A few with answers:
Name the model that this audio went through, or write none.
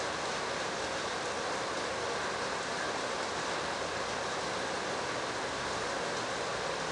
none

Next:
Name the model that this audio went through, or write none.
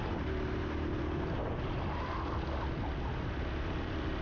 none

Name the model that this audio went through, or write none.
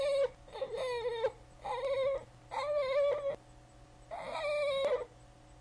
none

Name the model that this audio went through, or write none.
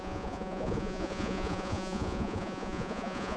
vocoder, Vocos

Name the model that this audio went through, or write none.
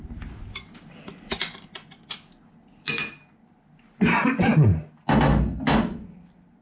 none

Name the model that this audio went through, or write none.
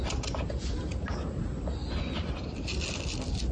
none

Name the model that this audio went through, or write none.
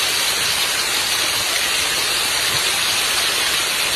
none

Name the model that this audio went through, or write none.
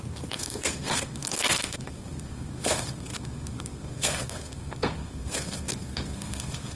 codec, SNAC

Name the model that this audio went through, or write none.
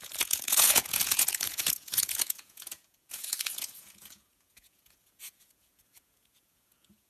vocoder, Vocos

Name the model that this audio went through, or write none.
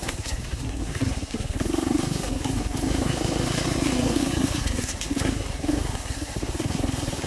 codec, SNAC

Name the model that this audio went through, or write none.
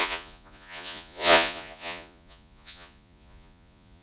vocoder, Vocos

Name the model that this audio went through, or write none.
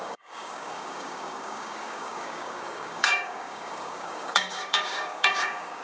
codec, DAC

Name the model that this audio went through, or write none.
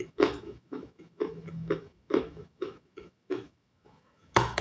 autoencoder, DAC-VAE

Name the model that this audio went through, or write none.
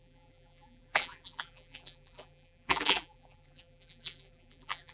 vocoder, BigVGAN v2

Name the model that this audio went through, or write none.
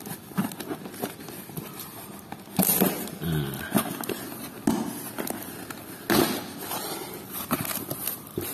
none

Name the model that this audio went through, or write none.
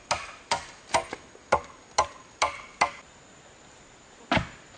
none